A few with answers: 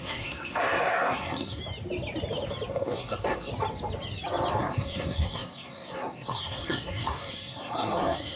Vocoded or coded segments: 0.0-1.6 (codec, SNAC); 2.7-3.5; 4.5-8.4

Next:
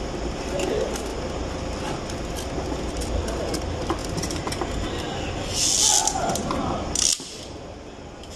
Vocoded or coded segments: 4.0-4.5 (vocoder, BigVGAN v2)